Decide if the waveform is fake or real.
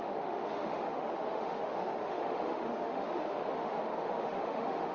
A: fake